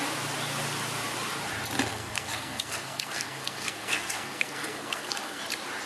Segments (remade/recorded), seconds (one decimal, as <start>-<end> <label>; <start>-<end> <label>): 0.0-1.9 recorded; 1.9-5.4 remade; 5.4-5.9 recorded